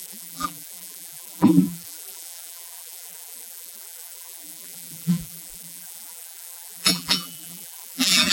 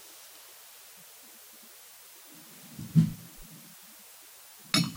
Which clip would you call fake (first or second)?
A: first